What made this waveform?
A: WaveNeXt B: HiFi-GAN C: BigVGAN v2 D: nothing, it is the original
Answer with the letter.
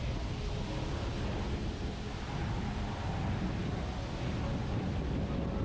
D